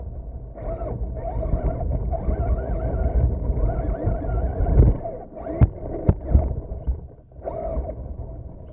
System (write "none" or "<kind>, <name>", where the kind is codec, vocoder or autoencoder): none